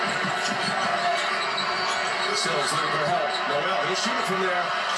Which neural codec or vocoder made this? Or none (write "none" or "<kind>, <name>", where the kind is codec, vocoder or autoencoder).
none